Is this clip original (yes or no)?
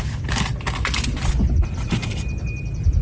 yes